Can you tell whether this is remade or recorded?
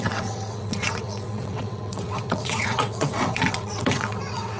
remade